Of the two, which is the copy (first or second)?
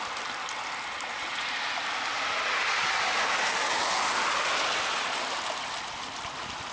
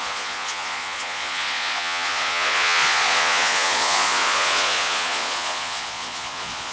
second